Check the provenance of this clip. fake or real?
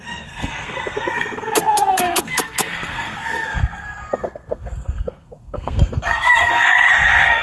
fake